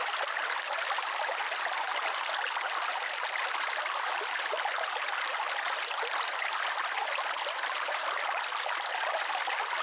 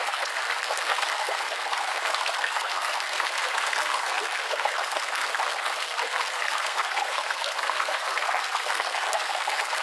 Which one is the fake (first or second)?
second